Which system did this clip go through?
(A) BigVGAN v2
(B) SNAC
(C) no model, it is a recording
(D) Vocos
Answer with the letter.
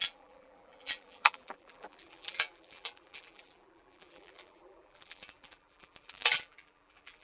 A